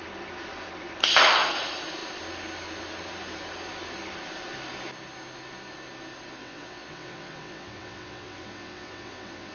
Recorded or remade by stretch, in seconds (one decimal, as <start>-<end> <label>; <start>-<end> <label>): 0.0-6.4 recorded; 6.4-9.5 remade

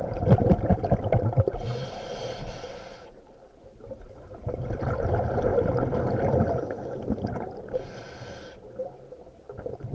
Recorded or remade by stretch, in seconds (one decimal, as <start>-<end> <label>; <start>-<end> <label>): 0.0-9.9 recorded

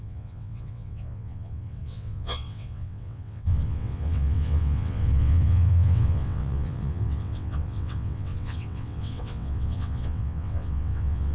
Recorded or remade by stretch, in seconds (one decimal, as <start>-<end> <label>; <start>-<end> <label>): 0.0-11.3 remade

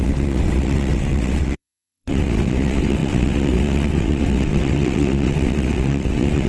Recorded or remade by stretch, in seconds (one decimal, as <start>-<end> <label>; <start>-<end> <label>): 0.0-6.5 remade

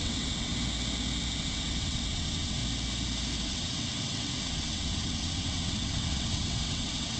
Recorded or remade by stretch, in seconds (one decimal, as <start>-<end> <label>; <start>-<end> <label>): 0.0-0.5 remade; 0.5-1.4 recorded; 1.4-2.6 remade; 2.6-3.4 recorded; 3.4-7.2 remade